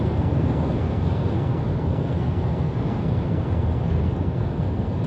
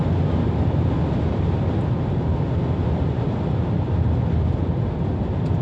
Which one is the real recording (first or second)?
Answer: second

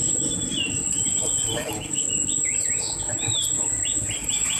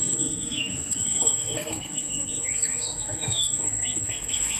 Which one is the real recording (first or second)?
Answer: first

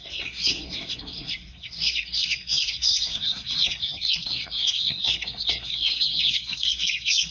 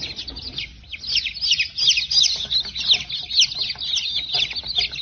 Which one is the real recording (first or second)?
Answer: second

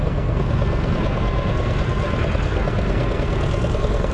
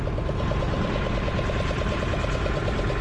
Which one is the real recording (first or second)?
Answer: second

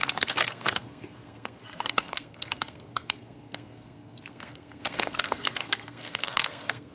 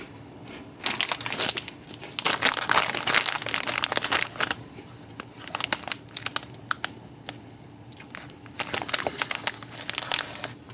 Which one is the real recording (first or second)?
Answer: second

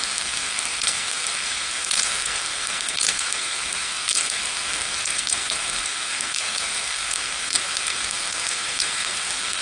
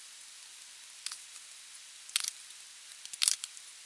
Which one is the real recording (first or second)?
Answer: second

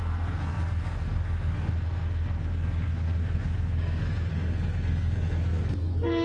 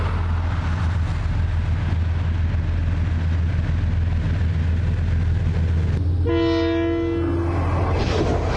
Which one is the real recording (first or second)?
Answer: second